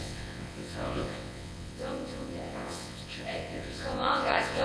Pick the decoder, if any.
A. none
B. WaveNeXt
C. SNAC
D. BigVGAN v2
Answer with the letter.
B